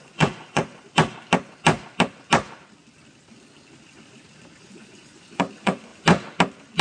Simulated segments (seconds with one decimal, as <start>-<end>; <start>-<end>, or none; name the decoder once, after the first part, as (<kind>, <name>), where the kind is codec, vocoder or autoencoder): 0.0-0.7 (vocoder, Vocos); 4.6-5.9